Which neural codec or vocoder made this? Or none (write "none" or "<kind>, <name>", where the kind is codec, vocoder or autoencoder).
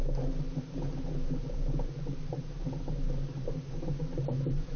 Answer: vocoder, BigVGAN v2